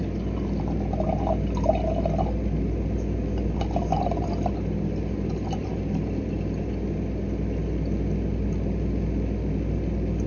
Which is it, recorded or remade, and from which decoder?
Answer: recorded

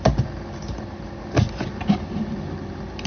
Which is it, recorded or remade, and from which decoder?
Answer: recorded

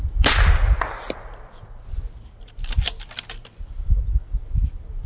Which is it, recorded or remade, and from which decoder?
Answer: recorded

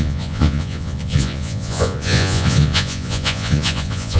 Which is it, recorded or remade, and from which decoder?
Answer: remade, vocoder, Vocos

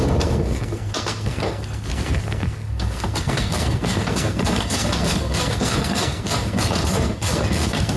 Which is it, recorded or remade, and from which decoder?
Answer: remade, codec, SNAC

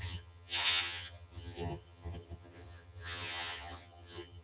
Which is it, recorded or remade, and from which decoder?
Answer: remade, vocoder, HiFi-GAN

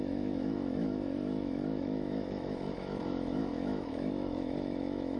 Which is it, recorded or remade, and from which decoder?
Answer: remade, autoencoder, DAC-VAE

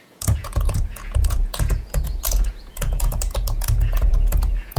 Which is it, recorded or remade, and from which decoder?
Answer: remade, vocoder, Vocos